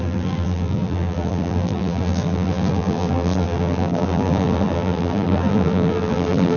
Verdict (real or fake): fake